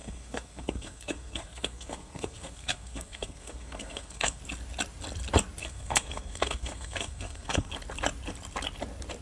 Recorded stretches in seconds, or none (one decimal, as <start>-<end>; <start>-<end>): 4.4-5.6; 7.7-9.2